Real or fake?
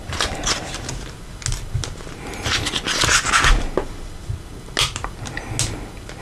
real